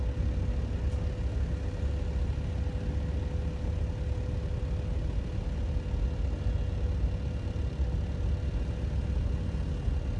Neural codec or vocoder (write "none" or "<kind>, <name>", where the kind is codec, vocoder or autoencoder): none